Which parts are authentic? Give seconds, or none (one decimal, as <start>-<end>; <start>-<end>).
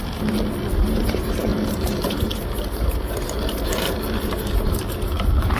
0.0-0.8